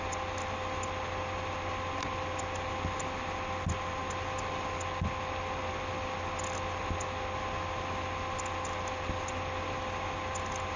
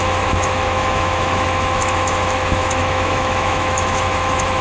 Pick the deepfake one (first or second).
second